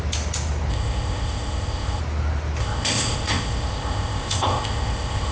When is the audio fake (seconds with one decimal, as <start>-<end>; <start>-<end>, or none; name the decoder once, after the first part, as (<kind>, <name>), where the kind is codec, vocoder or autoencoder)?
0.7-2.0 (codec, ZipCodec); 2.6-5.3